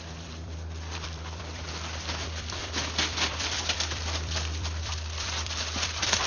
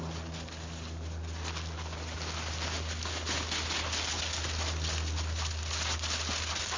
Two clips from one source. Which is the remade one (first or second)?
first